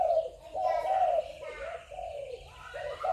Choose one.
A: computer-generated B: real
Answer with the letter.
A